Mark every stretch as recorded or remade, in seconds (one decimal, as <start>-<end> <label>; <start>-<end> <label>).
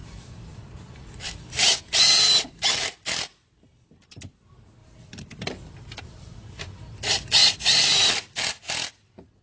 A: 0.0-1.2 remade; 1.2-4.8 recorded; 4.8-6.8 remade; 6.8-7.4 recorded; 7.4-9.4 remade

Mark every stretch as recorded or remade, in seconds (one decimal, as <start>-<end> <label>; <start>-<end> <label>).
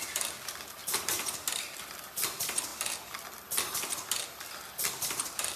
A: 0.0-2.7 remade; 2.7-4.7 recorded; 4.7-5.6 remade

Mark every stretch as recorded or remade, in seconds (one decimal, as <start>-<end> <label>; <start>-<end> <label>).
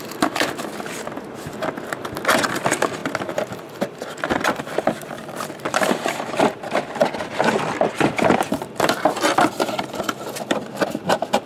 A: 0.0-7.0 remade; 7.0-7.6 recorded; 7.6-11.5 remade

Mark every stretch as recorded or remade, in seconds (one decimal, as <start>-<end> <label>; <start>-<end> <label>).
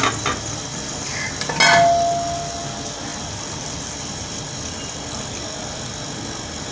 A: 0.0-0.7 recorded; 0.7-1.3 remade; 1.3-3.1 recorded; 3.1-5.2 remade; 5.2-6.7 recorded